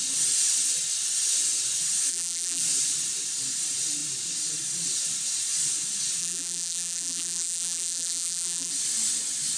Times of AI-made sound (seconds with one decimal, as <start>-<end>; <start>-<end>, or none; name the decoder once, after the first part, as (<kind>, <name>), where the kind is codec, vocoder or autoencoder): 2.1-2.6 (vocoder, BigVGAN v2); 6.2-8.7